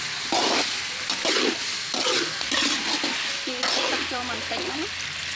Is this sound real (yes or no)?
no